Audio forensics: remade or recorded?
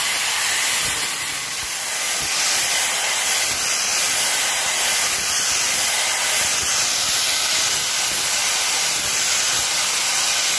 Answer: recorded